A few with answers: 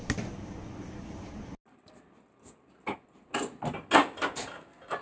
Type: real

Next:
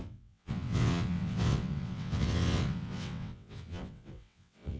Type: fake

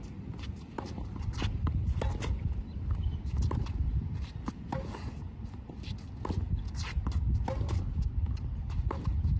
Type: real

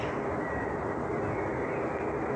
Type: real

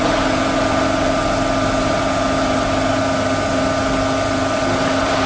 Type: real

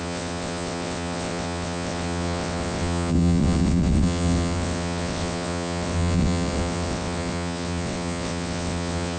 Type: fake